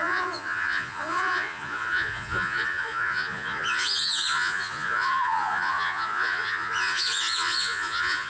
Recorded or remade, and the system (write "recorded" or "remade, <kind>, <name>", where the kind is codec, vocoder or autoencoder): remade, vocoder, Vocos